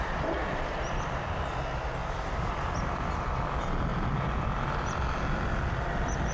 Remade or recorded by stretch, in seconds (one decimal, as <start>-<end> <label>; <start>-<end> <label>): 0.0-2.0 recorded; 2.0-3.4 remade; 3.4-6.3 recorded